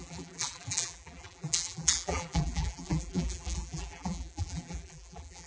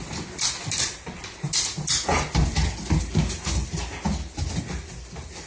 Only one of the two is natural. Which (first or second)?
second